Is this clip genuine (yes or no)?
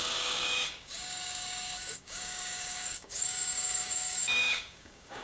no